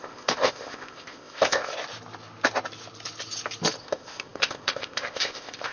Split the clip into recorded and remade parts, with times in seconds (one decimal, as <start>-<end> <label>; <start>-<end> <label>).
0.0-1.7 remade; 1.7-3.8 recorded; 3.8-5.7 remade